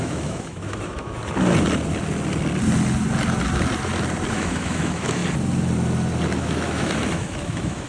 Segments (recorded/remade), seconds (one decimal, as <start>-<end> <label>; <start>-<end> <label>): 0.0-1.2 remade; 1.2-4.3 recorded; 4.3-5.2 remade; 5.2-6.4 recorded; 6.4-7.9 remade